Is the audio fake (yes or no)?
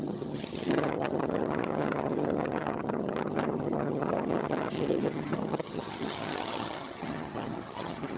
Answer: yes